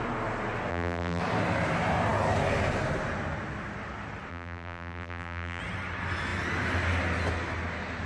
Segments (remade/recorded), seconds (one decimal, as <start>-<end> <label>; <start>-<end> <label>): 0.0-0.7 recorded; 0.7-1.2 remade; 1.2-4.3 recorded; 4.3-5.6 remade; 5.6-8.1 recorded